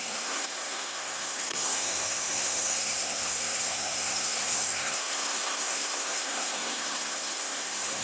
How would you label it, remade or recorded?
remade